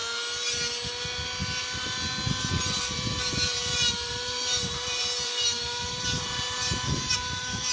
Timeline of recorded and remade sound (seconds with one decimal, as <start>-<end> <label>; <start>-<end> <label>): 0.0-2.8 recorded; 2.8-7.7 remade